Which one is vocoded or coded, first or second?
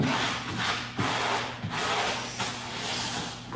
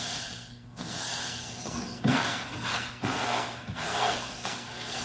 second